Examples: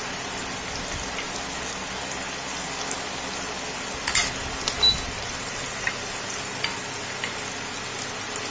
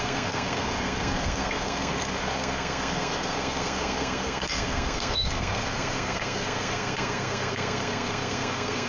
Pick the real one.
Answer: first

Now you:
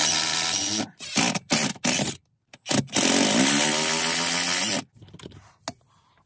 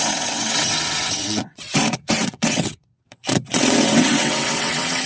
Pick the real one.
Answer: first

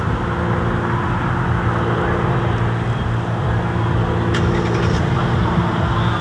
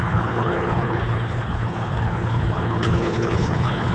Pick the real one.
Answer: first